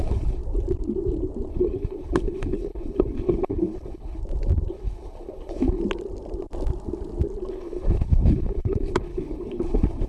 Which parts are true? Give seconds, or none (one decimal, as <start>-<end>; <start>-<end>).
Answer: 0.4-1.5; 4.2-4.7; 5.8-7.5

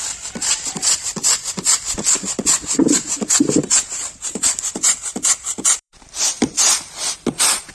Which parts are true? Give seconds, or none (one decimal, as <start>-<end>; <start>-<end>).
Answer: 0.0-2.8; 6.2-7.7

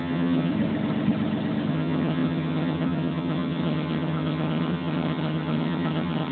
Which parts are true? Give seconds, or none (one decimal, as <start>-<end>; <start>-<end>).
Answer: 0.5-1.7

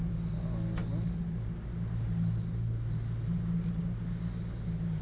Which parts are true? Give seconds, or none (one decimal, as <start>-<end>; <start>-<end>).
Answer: 0.0-5.0

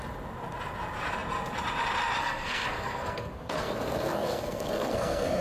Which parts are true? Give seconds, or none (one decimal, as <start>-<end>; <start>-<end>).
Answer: 0.0-2.2

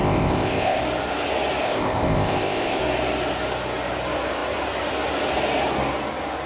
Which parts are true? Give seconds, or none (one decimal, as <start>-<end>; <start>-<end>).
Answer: 0.8-1.6; 2.8-6.5